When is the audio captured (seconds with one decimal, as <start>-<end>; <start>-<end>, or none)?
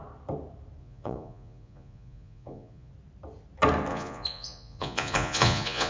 0.0-0.8; 2.9-3.9